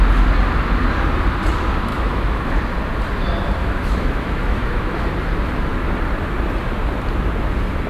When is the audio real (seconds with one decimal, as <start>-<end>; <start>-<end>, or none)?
0.0-1.9; 2.6-3.6; 5.1-7.9